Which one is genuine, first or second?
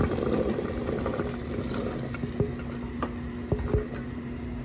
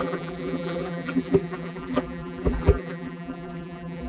first